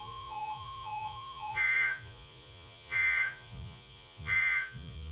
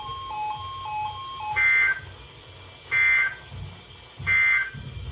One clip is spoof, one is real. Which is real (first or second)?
second